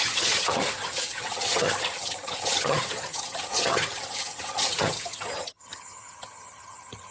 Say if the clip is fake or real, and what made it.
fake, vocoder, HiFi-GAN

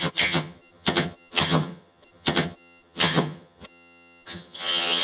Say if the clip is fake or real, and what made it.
fake, vocoder, HiFi-GAN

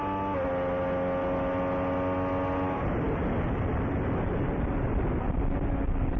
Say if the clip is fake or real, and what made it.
real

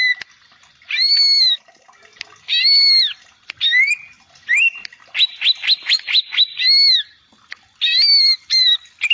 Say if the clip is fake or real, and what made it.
real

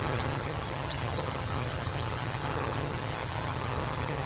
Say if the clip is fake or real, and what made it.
fake, vocoder, HiFi-GAN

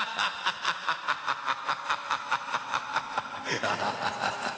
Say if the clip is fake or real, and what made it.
real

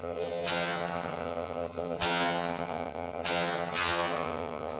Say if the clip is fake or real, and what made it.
fake, vocoder, HiFi-GAN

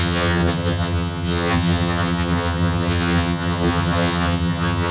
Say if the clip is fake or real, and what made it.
fake, vocoder, HiFi-GAN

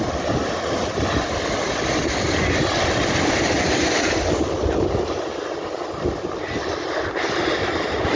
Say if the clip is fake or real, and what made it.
real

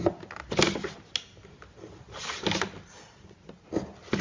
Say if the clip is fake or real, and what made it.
real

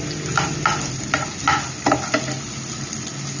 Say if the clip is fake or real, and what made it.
real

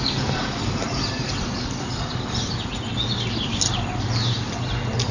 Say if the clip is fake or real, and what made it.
real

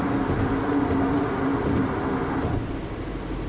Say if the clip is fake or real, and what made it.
real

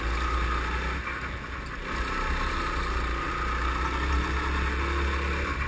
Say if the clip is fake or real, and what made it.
real